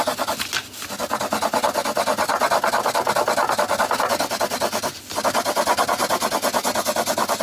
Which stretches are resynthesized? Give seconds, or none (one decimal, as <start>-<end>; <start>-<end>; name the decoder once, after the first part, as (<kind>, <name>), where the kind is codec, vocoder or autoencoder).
none